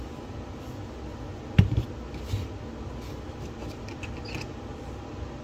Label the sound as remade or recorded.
recorded